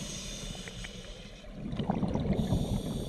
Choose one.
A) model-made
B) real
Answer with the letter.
B